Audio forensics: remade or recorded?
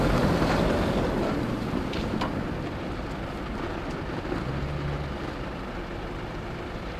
recorded